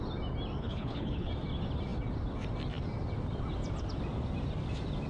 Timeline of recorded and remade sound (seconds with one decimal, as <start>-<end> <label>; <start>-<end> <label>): 0.0-0.6 recorded; 0.6-1.3 remade; 1.3-5.1 recorded